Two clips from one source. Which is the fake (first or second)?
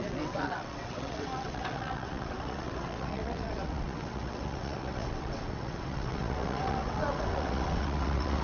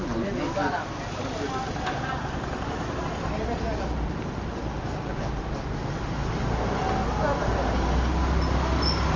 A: first